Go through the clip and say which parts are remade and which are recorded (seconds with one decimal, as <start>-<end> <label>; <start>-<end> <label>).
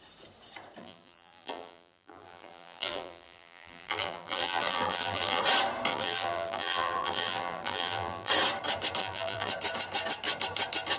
0.0-0.8 recorded; 0.8-5.4 remade; 5.4-5.9 recorded; 5.9-8.3 remade; 8.3-9.0 recorded; 9.0-9.5 remade; 9.5-11.0 recorded